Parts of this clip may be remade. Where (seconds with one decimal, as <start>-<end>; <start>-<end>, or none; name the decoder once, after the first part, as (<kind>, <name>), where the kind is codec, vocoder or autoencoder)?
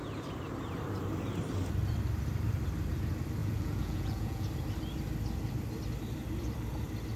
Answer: 3.4-4.5 (vocoder, Vocos)